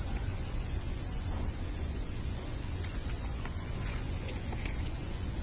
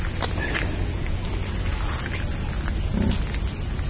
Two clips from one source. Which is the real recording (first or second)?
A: second